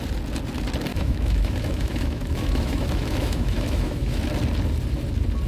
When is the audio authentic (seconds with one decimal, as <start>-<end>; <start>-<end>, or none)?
0.0-0.9; 4.2-5.5